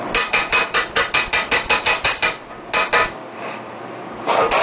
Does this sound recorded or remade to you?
recorded